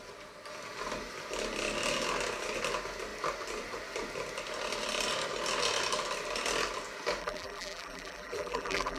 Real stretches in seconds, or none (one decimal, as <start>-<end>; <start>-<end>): 0.0-7.2